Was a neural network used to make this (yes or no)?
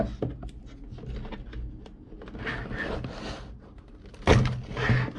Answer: no